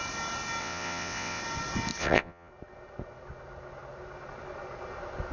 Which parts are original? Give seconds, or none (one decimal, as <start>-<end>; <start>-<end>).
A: 0.0-0.6; 1.4-2.0; 2.5-5.3